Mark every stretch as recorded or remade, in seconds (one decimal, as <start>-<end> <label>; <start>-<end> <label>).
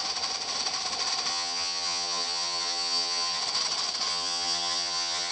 0.0-1.3 recorded; 1.3-3.4 remade; 3.4-4.1 recorded; 4.1-5.3 remade